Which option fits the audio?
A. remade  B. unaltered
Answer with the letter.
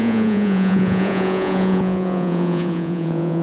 A